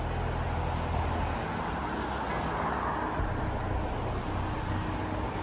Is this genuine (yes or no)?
yes